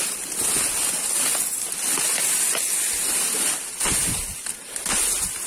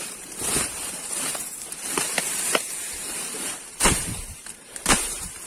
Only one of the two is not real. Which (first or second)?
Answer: second